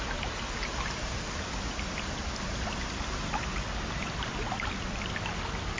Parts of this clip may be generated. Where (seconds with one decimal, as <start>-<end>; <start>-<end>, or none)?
0.7-1.5